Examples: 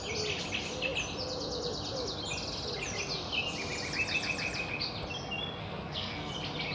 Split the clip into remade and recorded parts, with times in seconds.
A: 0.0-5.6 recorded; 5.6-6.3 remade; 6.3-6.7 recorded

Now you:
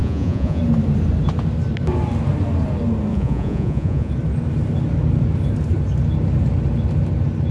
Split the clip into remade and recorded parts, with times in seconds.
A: 0.0-0.6 remade; 0.6-3.1 recorded; 3.1-4.1 remade; 4.1-7.5 recorded

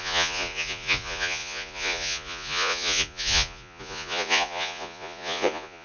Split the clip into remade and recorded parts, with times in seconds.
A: 0.0-5.8 remade